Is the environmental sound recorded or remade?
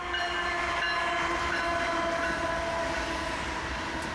recorded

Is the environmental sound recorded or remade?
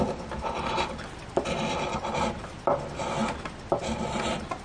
recorded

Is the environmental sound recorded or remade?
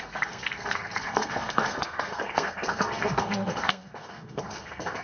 remade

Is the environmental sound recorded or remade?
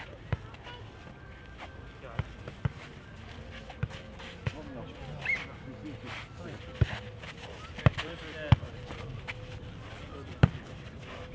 recorded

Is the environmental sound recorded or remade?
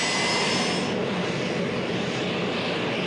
recorded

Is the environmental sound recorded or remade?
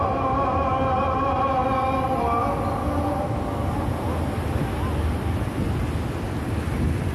recorded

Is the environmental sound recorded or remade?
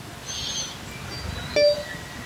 recorded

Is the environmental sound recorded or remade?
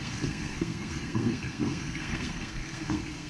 remade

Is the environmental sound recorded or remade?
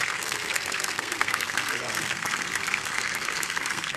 remade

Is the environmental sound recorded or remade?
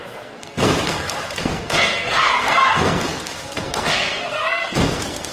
remade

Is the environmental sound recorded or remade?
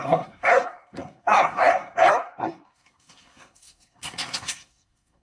remade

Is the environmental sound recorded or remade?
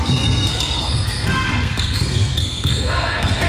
remade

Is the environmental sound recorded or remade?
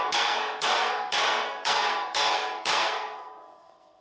remade